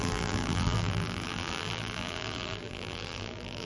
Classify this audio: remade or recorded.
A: remade